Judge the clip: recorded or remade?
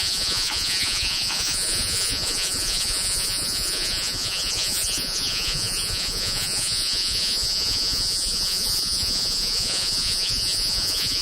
remade